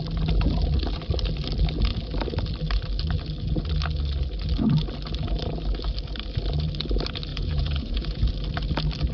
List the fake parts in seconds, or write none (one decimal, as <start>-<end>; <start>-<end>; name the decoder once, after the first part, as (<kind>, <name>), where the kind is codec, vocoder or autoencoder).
7.3-8.3 (vocoder, Vocos)